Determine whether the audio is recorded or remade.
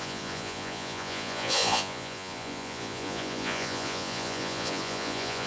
remade